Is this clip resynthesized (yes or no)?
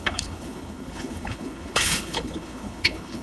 yes